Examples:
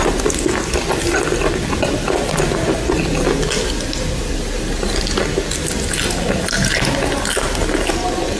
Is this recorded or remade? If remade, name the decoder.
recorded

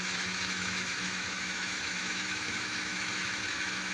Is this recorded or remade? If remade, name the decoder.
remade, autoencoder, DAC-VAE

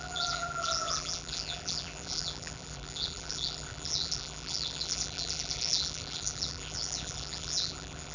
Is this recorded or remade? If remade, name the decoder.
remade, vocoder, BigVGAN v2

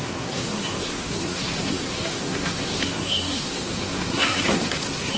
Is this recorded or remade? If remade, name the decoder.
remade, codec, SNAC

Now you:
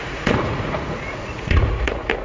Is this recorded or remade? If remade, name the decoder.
remade, vocoder, Vocos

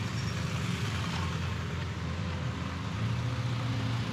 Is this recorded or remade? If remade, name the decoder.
recorded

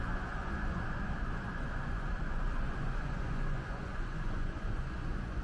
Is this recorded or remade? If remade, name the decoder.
remade, vocoder, Vocos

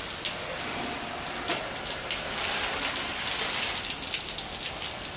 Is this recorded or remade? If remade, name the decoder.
recorded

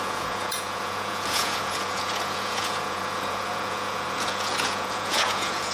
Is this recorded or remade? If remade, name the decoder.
remade, vocoder, Vocos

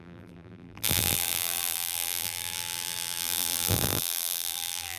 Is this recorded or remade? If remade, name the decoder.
remade, vocoder, BigVGAN v2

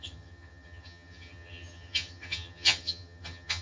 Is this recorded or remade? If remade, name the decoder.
remade, vocoder, HiFi-GAN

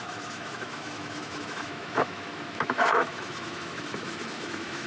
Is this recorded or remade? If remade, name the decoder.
remade, autoencoder, DAC-VAE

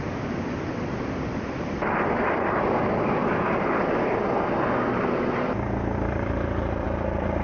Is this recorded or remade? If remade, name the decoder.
remade, vocoder, BigVGAN v2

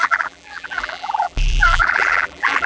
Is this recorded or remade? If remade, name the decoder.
remade, vocoder, BigVGAN v2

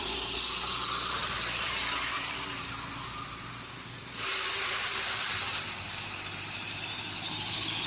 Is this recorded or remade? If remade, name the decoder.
remade, vocoder, BigVGAN v2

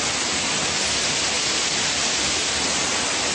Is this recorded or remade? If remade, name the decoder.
recorded